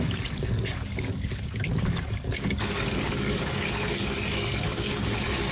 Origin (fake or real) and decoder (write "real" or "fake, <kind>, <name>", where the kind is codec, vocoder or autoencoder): fake, codec, DAC